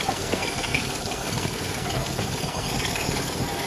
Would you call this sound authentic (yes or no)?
no